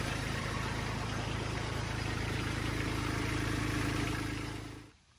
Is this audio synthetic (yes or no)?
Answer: yes